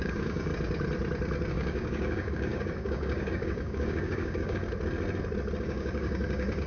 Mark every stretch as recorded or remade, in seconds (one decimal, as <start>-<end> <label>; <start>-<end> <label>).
0.0-0.5 remade; 0.5-1.5 recorded; 1.5-4.6 remade; 4.6-5.6 recorded; 5.6-6.7 remade